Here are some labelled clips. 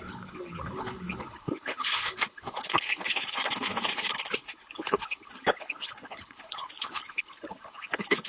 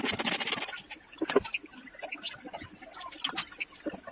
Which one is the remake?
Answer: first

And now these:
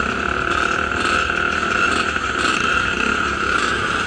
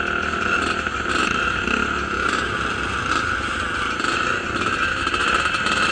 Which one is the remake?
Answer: first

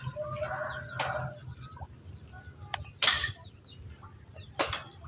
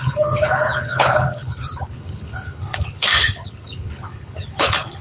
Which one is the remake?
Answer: second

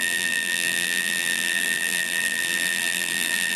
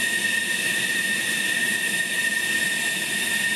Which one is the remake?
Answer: first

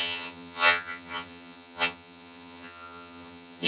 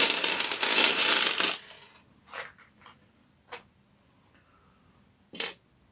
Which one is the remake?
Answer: first